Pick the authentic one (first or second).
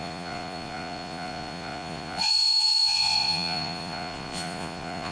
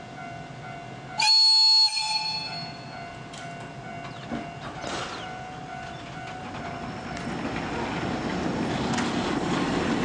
second